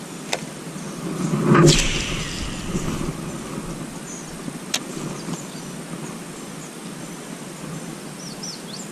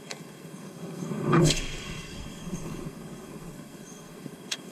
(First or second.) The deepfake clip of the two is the second